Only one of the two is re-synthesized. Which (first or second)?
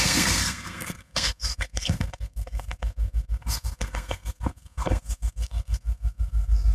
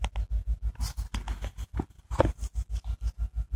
first